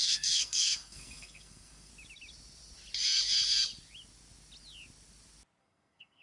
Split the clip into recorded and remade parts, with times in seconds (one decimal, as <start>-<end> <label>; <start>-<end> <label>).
0.0-1.9 remade; 1.9-5.6 recorded; 5.6-6.2 remade